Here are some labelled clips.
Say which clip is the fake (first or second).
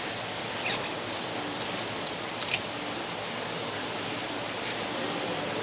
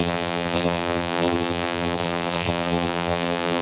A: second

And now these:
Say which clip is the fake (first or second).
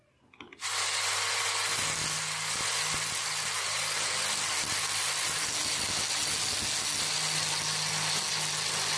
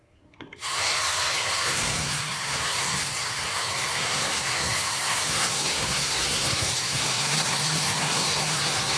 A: second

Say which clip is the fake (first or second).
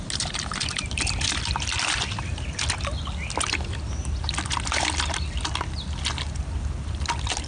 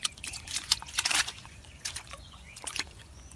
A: second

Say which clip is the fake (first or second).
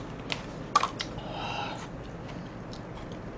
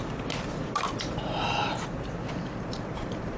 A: second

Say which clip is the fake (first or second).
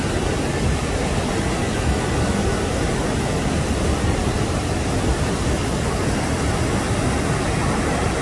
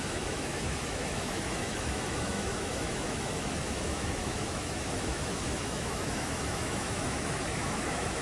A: second